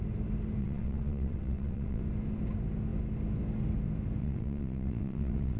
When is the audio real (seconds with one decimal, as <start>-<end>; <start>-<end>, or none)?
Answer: 0.0-0.6; 2.0-4.2